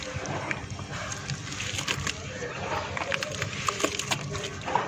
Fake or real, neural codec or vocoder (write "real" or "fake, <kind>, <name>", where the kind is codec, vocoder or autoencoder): real